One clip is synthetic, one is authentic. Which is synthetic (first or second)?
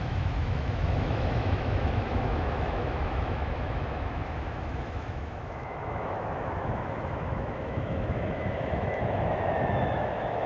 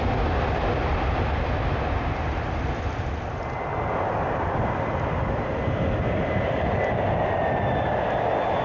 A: first